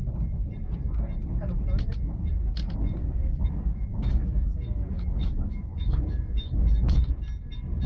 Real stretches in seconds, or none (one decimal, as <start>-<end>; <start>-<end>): 0.0-3.0; 7.0-7.9